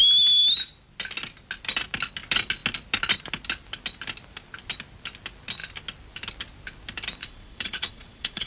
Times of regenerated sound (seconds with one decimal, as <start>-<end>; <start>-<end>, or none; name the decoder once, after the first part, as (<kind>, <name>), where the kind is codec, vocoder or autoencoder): 7.2-8.5 (vocoder, Vocos)